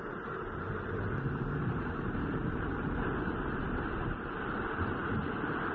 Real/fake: fake